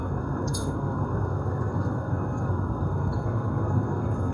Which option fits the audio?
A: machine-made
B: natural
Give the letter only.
A